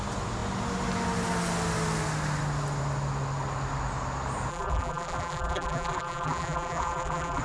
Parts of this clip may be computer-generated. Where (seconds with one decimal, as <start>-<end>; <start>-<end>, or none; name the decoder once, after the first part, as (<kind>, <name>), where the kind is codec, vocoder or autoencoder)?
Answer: 4.5-7.4 (vocoder, BigVGAN v2)